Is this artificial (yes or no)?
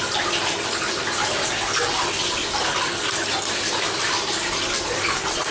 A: no